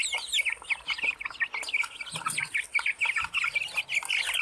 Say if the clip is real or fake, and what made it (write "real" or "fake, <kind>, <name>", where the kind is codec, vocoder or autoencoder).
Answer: real